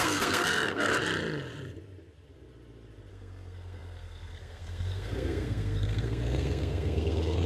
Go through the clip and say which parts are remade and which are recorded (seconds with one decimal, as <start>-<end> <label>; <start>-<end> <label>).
0.0-0.9 remade; 0.9-3.1 recorded; 3.1-7.5 remade